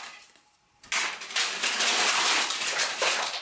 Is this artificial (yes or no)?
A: no